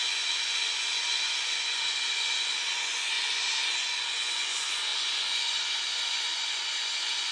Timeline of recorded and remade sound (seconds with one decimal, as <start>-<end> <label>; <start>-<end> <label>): 0.0-7.3 remade